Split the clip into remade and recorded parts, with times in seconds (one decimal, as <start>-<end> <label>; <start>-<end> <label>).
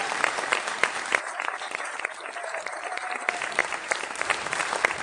0.0-5.0 remade